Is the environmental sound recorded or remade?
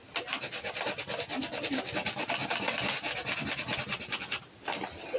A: recorded